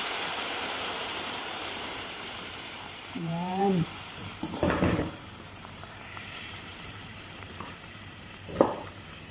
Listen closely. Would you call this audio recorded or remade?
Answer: remade